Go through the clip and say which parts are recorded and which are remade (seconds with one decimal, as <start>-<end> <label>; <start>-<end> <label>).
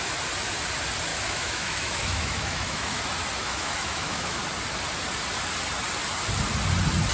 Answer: 0.0-1.1 recorded; 1.1-3.0 remade; 3.0-3.4 recorded; 3.4-4.4 remade; 4.4-7.1 recorded